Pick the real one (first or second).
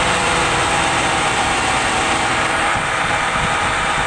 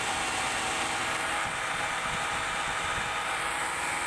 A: second